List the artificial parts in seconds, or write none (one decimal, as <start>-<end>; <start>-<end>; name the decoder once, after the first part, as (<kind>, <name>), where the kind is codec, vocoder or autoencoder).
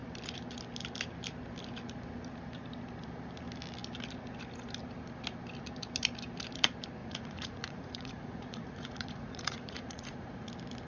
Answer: 7.0-10.5 (vocoder, Vocos)